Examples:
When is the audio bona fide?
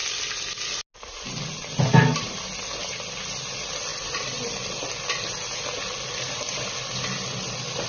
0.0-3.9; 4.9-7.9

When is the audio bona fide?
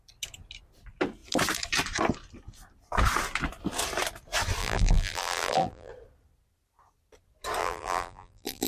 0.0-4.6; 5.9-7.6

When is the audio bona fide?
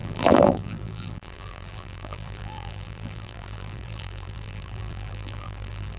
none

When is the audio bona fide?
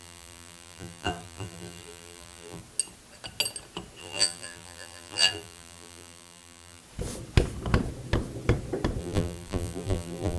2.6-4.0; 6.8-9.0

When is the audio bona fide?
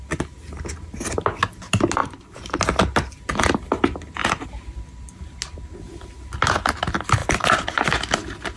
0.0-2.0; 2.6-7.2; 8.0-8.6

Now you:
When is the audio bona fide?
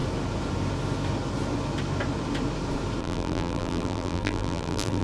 0.0-3.0